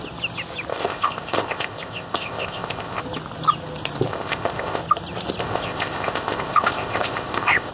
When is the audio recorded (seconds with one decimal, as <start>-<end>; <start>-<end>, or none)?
0.0-0.7; 3.0-4.1; 4.8-5.4